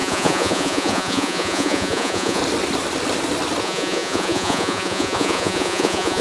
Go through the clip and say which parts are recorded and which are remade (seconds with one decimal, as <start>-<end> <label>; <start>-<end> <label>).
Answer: 0.0-2.4 remade; 2.4-3.6 recorded; 3.6-6.2 remade